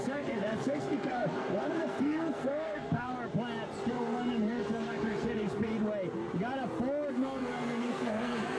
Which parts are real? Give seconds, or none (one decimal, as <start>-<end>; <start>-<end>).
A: 3.1-3.9; 5.7-7.1